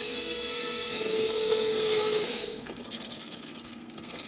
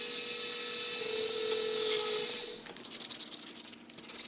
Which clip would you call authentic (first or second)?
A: second